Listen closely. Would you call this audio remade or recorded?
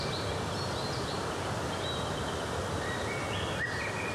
recorded